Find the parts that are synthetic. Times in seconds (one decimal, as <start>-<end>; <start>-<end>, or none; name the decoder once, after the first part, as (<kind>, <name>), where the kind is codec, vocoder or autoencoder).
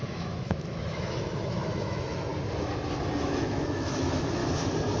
0.0-2.3 (autoencoder, DAC-VAE); 3.2-4.4